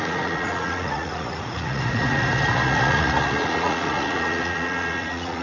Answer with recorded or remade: remade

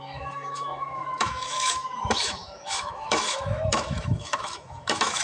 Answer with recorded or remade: remade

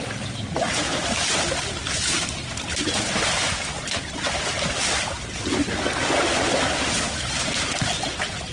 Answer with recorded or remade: recorded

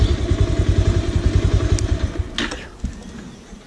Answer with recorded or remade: recorded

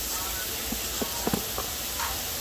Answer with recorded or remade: recorded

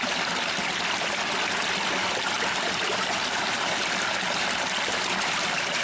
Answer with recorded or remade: remade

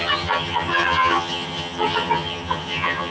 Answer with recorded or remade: remade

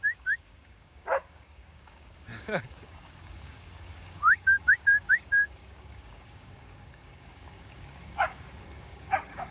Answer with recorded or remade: remade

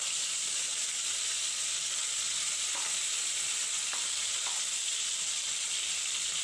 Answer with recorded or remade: recorded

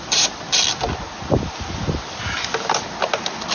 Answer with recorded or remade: recorded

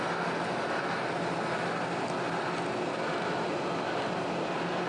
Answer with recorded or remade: recorded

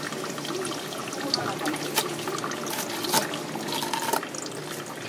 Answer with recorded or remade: recorded